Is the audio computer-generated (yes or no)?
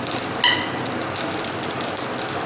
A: no